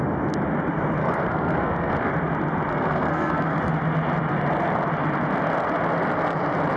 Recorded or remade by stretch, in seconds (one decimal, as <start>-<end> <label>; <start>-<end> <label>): 0.0-1.0 recorded; 1.0-2.1 remade; 2.1-2.7 recorded; 2.7-3.6 remade; 3.6-6.8 recorded